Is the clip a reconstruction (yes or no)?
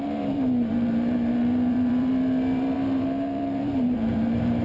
yes